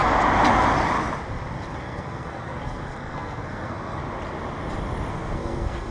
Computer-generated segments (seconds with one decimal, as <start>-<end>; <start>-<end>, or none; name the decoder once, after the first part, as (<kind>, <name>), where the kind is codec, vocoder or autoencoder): 1.8-4.0 (codec, SNAC); 5.1-5.9